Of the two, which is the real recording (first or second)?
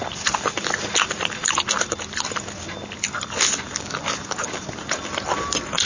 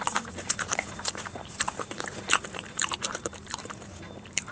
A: first